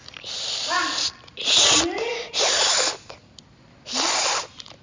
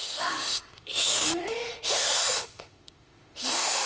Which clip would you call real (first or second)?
first